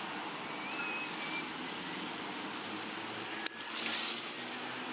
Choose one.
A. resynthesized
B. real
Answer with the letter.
B